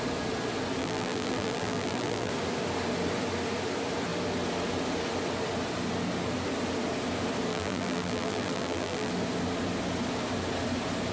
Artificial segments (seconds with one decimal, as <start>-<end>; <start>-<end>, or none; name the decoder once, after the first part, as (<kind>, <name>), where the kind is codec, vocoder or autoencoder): 0.8-2.3 (vocoder, BigVGAN v2); 7.5-9.1